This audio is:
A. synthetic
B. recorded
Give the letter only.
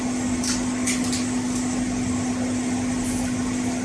B